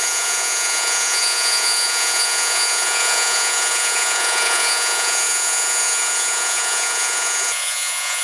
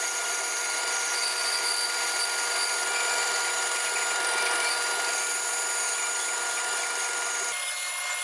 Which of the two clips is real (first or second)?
second